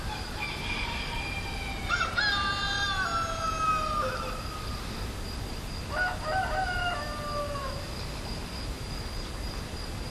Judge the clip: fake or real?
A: real